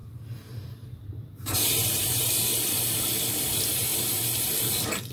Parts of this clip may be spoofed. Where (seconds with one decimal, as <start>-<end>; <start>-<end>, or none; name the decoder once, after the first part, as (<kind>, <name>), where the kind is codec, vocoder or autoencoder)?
0.0-2.3 (vocoder, BigVGAN v2)